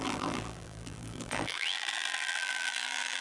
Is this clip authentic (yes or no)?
no